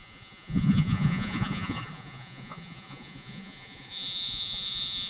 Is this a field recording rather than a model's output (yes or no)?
no